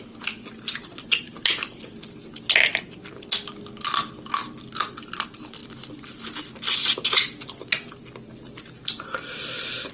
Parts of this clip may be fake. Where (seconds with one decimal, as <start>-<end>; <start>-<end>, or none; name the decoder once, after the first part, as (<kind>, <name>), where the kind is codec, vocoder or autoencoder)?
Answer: none